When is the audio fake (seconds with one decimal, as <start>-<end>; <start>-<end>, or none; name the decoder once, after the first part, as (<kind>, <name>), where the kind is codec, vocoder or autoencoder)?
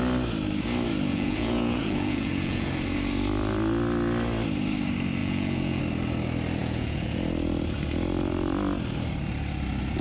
1.1-2.7 (vocoder, Vocos); 5.2-5.8; 6.6-7.2